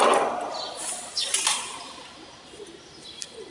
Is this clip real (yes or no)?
yes